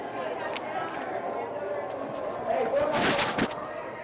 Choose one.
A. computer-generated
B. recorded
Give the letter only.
B